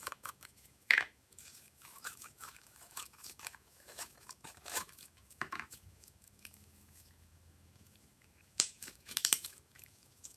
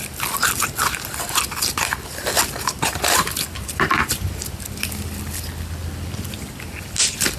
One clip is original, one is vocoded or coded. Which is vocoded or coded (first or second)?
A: first